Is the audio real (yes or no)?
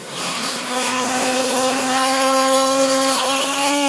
no